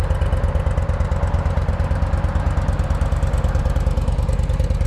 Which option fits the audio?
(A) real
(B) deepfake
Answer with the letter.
A